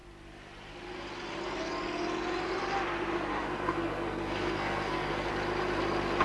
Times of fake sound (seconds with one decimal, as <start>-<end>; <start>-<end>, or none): 3.3-5.3